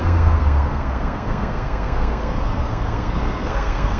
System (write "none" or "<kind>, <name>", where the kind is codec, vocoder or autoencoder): codec, SNAC